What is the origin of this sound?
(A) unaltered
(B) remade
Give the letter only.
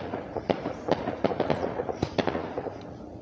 B